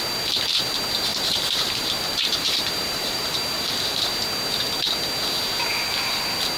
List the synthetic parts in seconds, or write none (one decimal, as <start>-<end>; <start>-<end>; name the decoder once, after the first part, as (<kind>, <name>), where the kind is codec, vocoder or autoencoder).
1.1-4.1 (vocoder, BigVGAN v2)